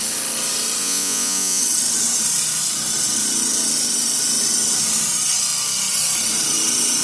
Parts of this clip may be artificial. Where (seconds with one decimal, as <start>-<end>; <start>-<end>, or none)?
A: 0.8-1.6